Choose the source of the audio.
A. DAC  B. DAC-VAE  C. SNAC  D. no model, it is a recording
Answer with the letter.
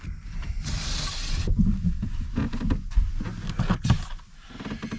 D